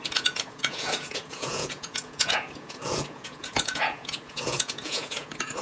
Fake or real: fake